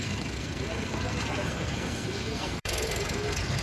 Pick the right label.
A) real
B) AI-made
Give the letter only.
B